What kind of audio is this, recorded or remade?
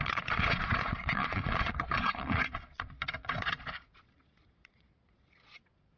remade